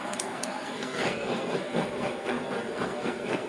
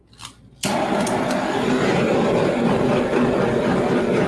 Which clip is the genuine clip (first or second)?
second